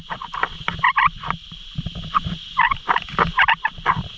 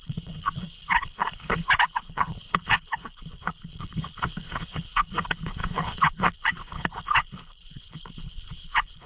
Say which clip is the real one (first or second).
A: first